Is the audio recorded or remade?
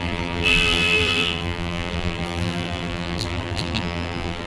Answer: remade